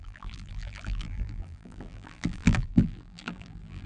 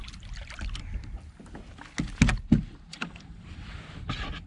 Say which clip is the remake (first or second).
first